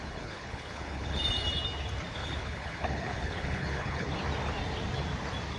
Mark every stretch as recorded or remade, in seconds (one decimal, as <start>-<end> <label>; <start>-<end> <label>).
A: 0.0-1.2 remade; 1.2-2.1 recorded; 2.1-4.2 remade; 4.2-5.6 recorded